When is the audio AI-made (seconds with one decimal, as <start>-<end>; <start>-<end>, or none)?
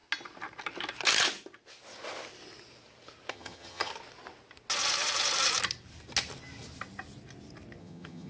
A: 3.3-3.9; 7.8-8.3